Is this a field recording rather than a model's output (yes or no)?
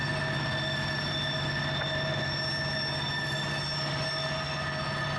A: yes